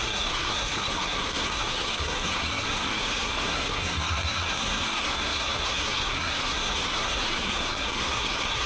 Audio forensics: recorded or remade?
remade